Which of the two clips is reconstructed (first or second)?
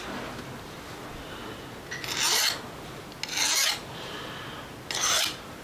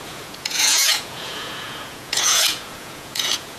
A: second